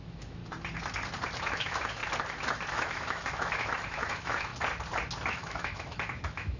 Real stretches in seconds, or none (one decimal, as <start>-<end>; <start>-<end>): 0.4-1.4; 2.0-2.7; 4.5-5.3